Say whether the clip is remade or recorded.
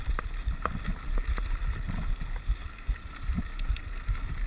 recorded